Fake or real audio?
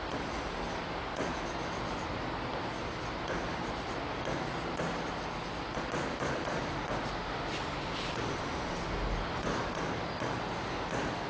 real